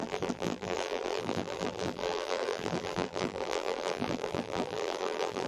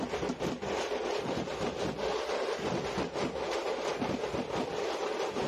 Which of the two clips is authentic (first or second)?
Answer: second